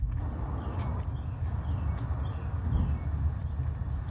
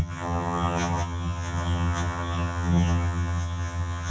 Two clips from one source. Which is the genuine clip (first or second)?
first